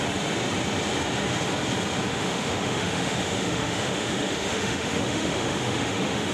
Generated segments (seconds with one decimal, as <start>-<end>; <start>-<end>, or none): 2.1-6.3